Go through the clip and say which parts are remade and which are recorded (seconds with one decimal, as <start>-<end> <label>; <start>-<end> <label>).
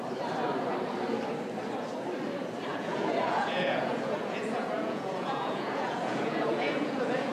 0.0-2.7 recorded; 2.7-7.3 remade